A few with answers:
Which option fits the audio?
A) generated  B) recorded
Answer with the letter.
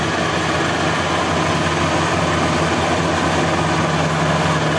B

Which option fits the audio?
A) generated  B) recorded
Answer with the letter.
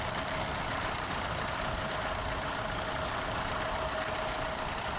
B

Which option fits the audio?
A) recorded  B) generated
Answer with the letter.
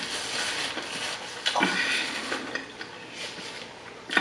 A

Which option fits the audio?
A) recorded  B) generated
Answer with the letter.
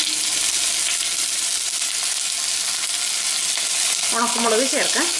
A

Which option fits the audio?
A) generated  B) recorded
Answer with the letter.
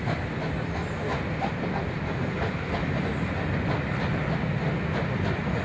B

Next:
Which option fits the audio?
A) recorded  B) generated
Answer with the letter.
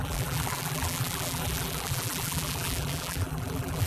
B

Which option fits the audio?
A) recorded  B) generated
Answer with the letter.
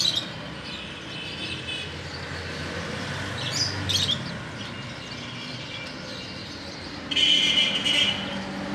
A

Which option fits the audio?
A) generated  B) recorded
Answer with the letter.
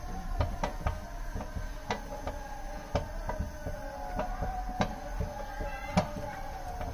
B